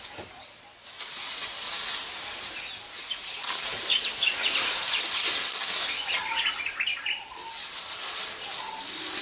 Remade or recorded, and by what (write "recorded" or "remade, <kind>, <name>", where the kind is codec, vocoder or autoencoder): recorded